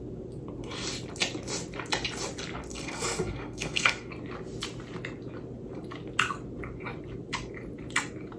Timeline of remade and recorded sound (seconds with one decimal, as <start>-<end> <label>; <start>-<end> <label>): 0.0-2.7 recorded; 2.7-4.1 remade; 4.1-8.4 recorded